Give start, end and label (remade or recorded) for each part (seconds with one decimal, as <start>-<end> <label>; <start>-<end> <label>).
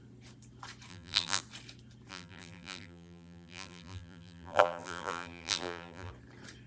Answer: 0.0-0.9 recorded; 0.9-1.4 remade; 1.4-2.1 recorded; 2.1-6.1 remade; 6.1-6.7 recorded